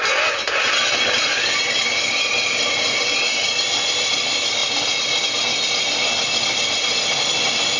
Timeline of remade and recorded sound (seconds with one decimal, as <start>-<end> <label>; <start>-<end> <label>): 0.0-7.8 recorded